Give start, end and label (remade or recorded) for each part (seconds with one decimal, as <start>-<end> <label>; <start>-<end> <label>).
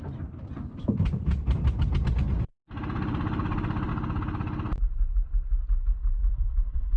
0.0-2.5 recorded; 2.5-3.9 remade; 3.9-6.2 recorded; 6.2-7.0 remade